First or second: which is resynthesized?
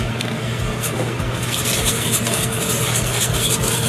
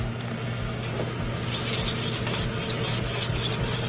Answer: first